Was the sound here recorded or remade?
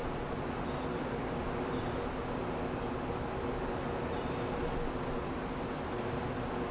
recorded